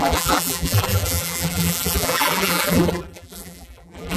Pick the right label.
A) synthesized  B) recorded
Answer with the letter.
A